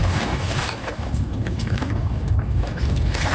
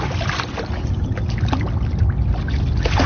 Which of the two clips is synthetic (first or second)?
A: first